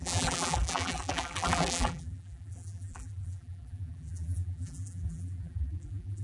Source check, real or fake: fake